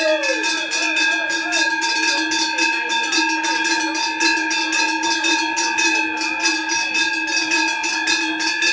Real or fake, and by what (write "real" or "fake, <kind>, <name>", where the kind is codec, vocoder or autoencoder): real